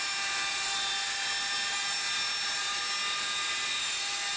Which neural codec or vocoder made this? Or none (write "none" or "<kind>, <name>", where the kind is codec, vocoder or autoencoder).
none